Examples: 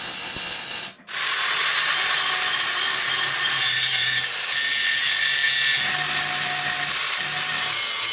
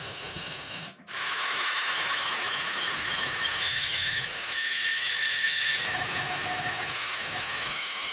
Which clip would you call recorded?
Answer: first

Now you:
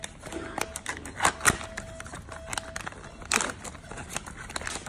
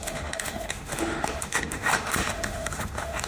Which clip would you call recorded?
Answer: first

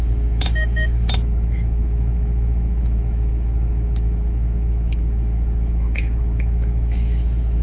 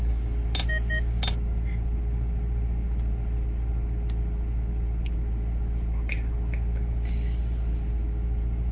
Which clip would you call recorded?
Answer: second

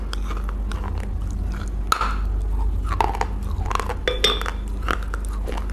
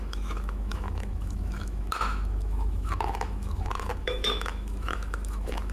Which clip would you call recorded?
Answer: first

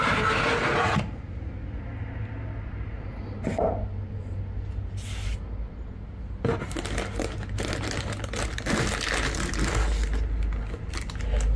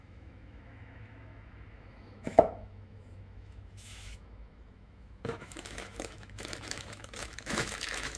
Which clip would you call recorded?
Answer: first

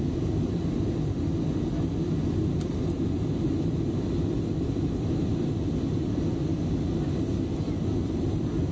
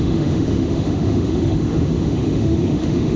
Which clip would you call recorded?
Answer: first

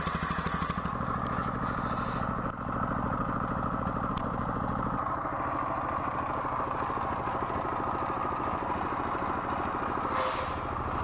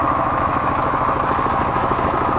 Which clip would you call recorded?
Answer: first